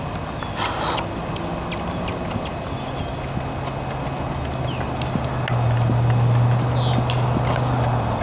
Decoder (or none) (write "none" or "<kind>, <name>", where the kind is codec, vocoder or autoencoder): none